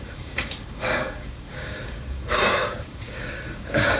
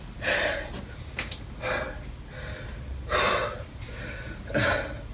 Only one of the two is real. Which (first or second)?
second